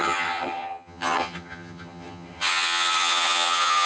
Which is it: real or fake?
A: fake